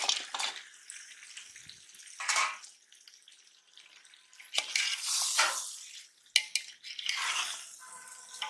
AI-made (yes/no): no